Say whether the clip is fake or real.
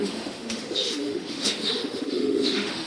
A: fake